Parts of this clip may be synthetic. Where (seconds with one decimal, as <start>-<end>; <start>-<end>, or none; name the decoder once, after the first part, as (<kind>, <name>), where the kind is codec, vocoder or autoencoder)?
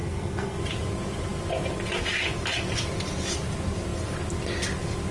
0.0-0.6 (codec, SNAC)